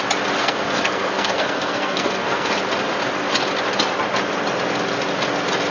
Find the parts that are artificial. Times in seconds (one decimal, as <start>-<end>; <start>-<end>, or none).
0.4-2.6